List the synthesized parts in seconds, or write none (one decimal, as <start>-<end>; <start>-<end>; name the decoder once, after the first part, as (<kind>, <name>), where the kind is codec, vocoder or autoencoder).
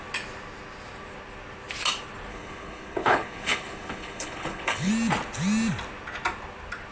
2.3-4.9 (codec, HILCodec)